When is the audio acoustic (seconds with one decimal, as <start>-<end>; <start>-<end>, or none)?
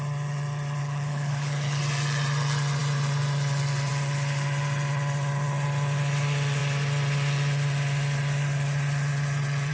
0.0-0.8; 1.8-9.7